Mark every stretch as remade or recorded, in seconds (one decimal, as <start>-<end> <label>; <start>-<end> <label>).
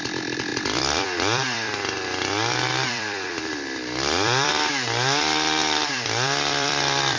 0.0-7.2 remade